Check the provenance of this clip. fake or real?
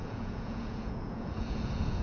fake